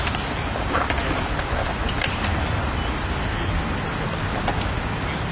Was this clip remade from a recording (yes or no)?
no